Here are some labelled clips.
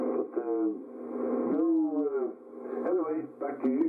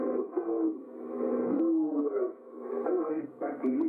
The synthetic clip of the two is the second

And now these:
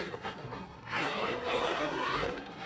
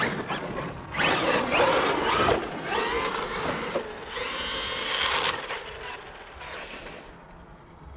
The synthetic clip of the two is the first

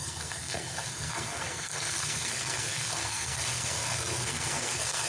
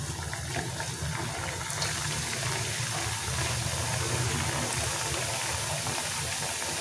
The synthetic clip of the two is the first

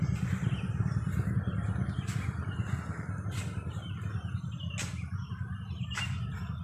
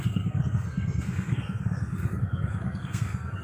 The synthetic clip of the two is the second